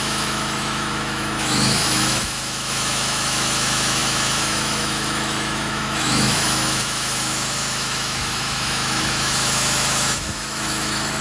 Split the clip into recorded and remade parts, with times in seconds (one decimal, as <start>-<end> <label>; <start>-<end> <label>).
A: 0.0-11.2 remade